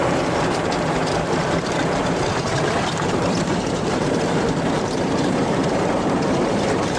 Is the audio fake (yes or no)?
yes